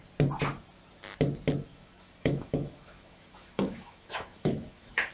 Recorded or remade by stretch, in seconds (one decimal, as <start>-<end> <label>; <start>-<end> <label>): 0.0-1.7 recorded; 1.7-5.1 remade